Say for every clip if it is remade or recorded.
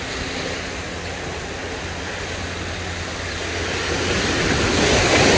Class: recorded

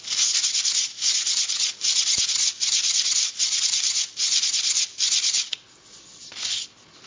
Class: recorded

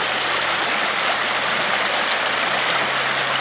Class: recorded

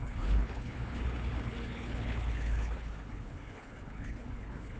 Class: remade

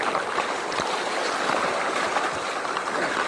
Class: recorded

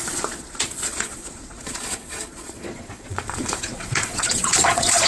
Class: remade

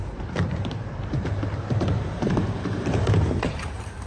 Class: remade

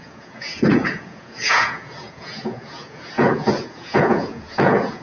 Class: remade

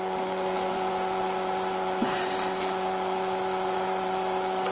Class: remade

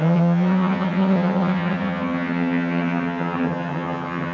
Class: remade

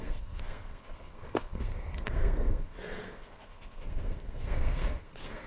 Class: remade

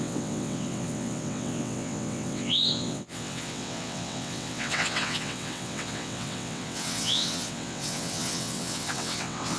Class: remade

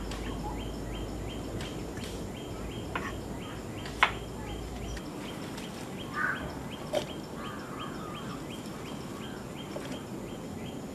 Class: recorded